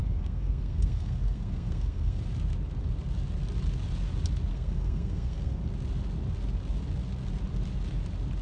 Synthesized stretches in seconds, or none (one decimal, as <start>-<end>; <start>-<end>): 0.0-2.2; 4.5-5.6